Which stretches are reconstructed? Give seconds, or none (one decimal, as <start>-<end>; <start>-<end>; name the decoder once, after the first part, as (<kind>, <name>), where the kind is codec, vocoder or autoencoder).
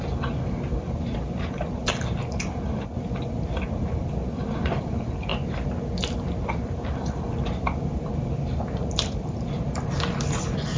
0.0-4.2 (vocoder, BigVGAN v2); 4.8-5.3; 6.5-10.8